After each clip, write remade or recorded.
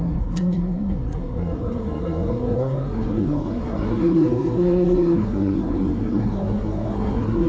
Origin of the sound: remade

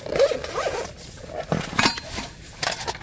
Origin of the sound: recorded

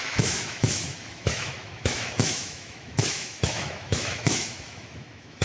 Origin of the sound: remade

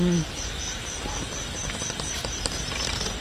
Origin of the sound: remade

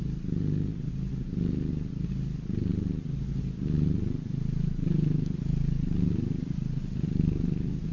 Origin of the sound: recorded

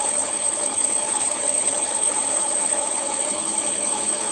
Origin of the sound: remade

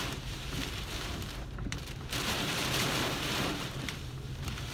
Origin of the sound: remade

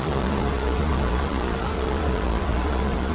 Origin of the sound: remade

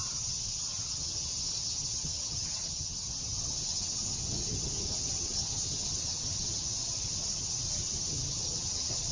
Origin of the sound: remade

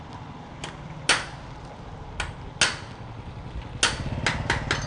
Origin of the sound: recorded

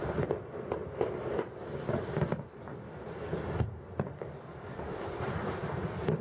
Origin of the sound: remade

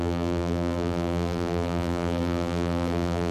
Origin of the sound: remade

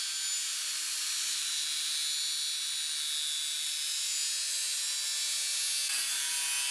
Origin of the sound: recorded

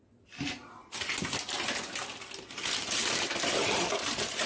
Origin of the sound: recorded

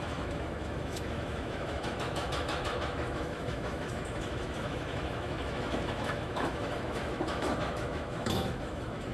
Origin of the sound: remade